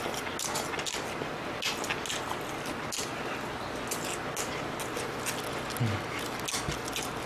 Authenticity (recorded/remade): recorded